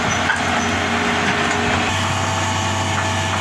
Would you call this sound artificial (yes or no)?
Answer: no